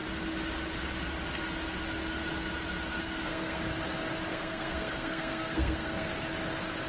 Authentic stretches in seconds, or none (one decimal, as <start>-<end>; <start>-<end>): 0.0-3.0; 3.6-4.3; 6.1-6.9